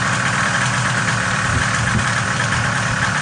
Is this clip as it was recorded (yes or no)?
no